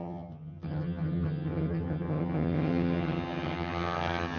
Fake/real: fake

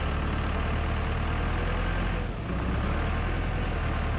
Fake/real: real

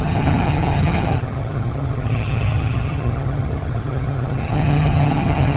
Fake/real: fake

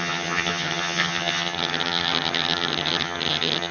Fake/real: fake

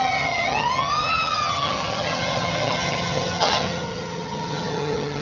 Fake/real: fake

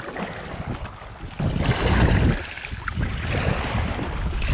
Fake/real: real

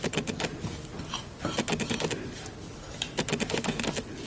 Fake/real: real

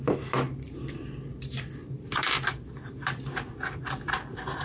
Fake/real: real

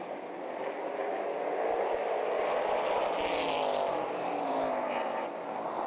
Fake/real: real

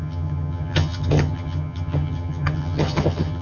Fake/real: fake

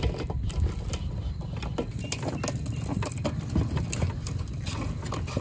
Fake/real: real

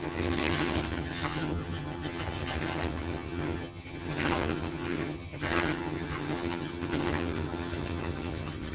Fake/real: fake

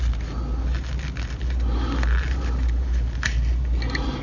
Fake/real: real